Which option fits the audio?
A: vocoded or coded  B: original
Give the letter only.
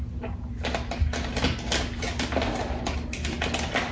B